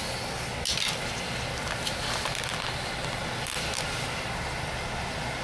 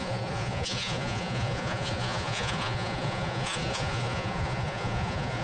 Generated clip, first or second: second